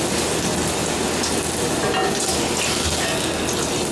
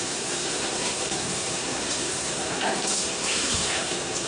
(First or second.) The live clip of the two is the first